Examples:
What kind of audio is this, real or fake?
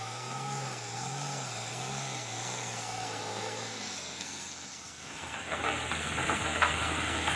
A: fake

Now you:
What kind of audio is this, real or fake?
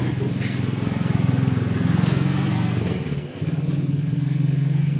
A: fake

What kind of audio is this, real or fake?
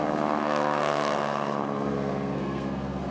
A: fake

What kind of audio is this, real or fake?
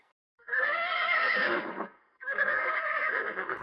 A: fake